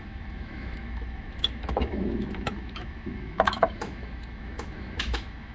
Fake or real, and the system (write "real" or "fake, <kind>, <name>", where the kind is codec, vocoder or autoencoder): fake, autoencoder, DAC-VAE